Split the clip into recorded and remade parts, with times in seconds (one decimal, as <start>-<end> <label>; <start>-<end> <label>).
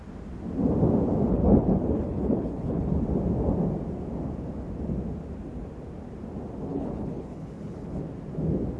0.0-1.3 recorded; 1.3-2.9 remade; 2.9-6.7 recorded; 6.7-8.0 remade; 8.0-8.8 recorded